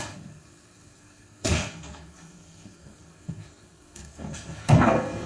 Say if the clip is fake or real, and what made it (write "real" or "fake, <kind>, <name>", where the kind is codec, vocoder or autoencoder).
fake, codec, SNAC